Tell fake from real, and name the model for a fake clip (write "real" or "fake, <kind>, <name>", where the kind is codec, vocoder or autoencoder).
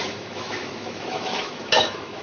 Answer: fake, autoencoder, DAC-VAE